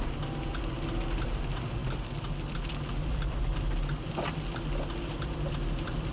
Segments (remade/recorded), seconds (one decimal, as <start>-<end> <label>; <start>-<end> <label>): 0.0-6.1 recorded